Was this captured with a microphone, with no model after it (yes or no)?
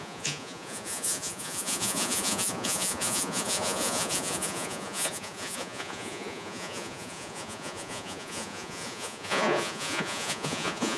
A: no